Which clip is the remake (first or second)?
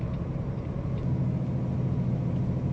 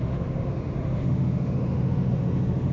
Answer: second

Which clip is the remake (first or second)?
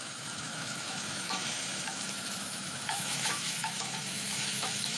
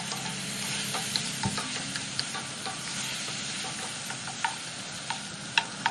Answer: first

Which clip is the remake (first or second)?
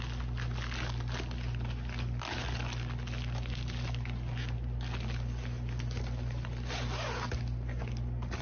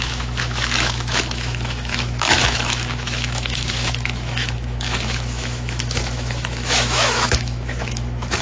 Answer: second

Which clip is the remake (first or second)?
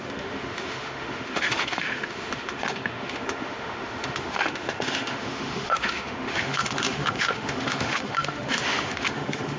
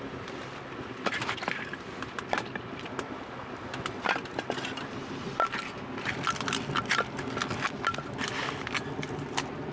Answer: first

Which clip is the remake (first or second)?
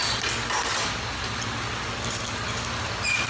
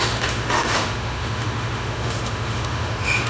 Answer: second